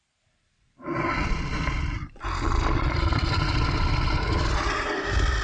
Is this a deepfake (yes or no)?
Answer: no